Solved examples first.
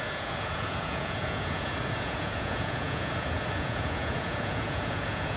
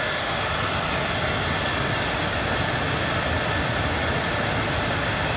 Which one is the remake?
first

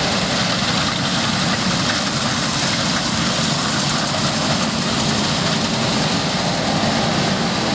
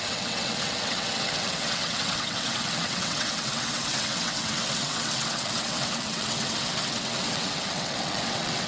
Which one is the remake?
second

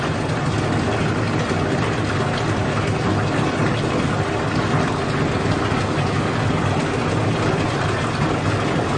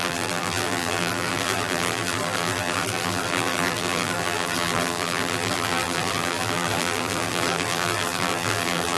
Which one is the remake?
second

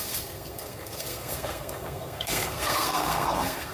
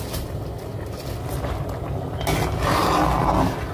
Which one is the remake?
first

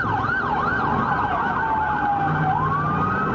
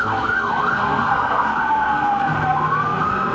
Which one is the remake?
second